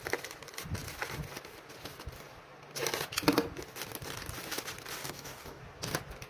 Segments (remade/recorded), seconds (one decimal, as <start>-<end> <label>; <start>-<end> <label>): 0.0-5.0 recorded; 5.0-5.6 remade; 5.6-6.3 recorded